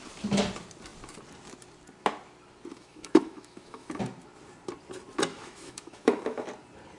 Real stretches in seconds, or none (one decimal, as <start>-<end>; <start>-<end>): 0.0-2.7; 4.0-5.3; 6.5-7.0